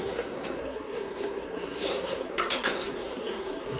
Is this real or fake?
fake